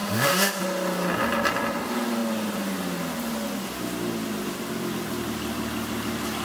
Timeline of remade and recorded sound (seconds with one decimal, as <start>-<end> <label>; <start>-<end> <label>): 0.0-0.6 remade; 0.6-6.4 recorded